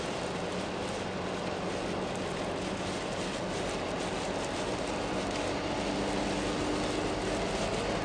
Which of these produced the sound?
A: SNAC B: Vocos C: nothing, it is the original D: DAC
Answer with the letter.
C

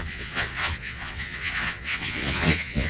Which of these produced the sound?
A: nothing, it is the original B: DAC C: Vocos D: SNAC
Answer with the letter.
C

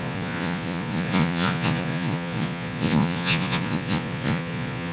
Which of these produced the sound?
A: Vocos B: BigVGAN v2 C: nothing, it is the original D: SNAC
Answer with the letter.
A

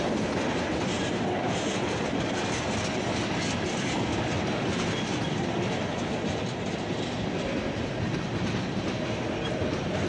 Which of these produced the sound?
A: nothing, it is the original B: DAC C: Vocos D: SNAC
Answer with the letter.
A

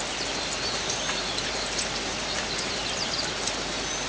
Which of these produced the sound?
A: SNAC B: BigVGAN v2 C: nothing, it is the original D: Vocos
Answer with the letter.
C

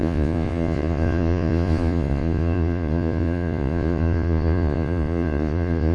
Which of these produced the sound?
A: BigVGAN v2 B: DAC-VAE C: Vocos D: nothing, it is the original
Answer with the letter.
C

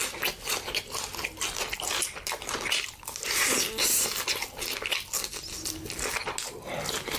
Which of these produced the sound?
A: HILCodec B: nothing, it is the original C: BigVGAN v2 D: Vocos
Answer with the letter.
B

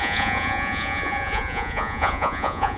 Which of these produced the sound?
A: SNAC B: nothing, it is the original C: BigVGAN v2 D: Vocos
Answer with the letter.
D